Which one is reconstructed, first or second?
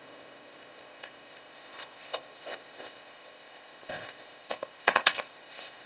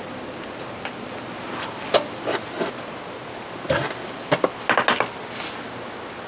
first